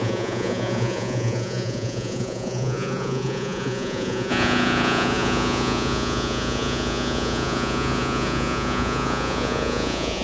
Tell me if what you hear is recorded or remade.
remade